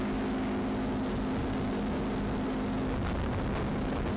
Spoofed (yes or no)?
no